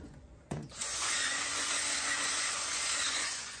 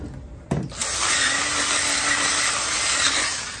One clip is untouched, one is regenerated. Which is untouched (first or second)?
second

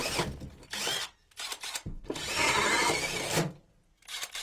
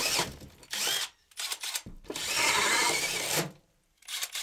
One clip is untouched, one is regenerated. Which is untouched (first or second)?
first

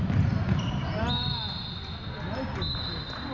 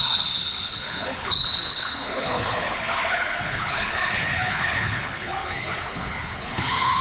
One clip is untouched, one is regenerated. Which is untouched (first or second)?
first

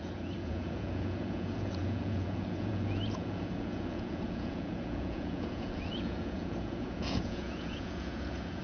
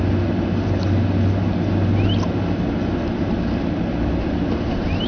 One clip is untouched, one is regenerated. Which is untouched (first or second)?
second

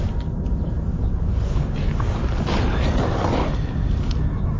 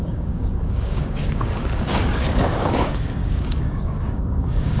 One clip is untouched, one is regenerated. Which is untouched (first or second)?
first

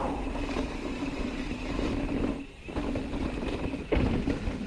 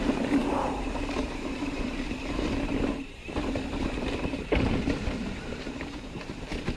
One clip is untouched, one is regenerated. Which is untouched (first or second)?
first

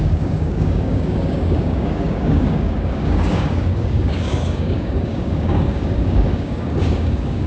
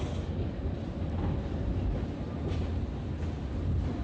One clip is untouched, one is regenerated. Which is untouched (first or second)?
second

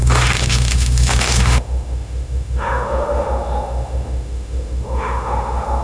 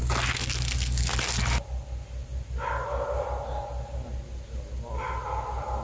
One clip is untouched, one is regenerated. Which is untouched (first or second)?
second